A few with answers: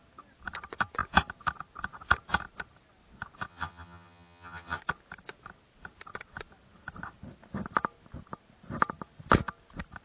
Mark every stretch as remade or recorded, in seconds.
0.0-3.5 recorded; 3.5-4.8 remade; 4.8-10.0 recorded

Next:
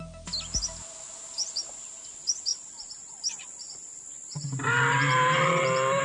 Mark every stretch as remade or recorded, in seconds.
0.0-6.0 recorded

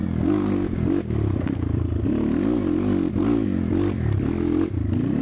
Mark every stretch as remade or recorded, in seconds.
0.0-3.1 recorded; 3.1-5.2 remade

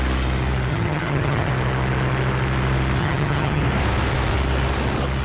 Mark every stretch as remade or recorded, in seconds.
0.0-0.7 recorded; 0.7-1.5 remade; 1.5-3.0 recorded; 3.0-3.6 remade; 3.6-5.2 recorded

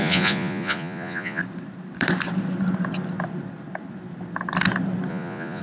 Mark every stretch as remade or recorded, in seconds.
0.0-1.4 remade; 1.4-5.1 recorded; 5.1-5.6 remade

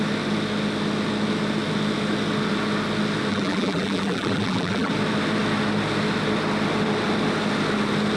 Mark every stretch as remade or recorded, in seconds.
0.0-3.3 recorded; 3.3-4.9 remade; 4.9-8.2 recorded

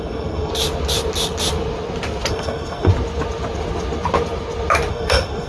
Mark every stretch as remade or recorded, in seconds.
0.0-0.5 remade; 0.5-2.3 recorded; 2.3-2.9 remade; 2.9-4.9 recorded; 4.9-5.5 remade